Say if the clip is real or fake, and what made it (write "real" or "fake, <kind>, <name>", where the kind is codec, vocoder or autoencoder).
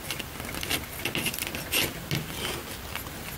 real